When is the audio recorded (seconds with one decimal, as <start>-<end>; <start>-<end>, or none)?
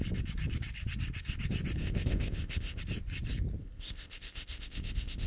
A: 0.0-1.8; 2.8-3.6